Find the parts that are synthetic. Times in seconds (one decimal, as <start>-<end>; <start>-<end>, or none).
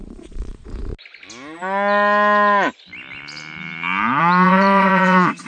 0.0-0.9; 4.2-5.5